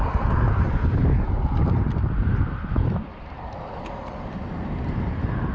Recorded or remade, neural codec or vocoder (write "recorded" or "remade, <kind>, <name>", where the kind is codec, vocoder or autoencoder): recorded